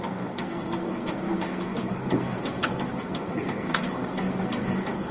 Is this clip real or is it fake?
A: fake